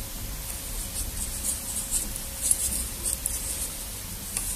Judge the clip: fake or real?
real